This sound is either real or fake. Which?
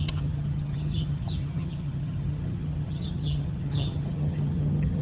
fake